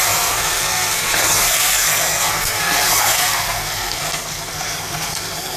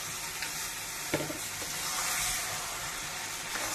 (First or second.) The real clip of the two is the second